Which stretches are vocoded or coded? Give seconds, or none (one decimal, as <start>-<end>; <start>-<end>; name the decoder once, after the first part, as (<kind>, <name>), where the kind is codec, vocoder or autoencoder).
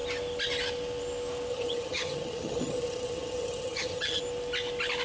1.5-4.2 (vocoder, HiFi-GAN)